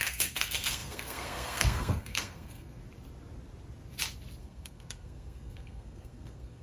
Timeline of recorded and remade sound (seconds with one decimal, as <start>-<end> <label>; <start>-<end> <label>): 0.0-2.8 remade; 2.8-4.4 recorded; 4.4-6.6 remade